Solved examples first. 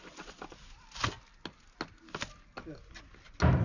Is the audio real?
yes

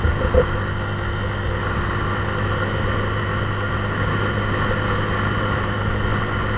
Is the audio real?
yes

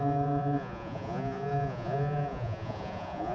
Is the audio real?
no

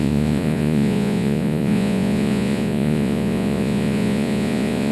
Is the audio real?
no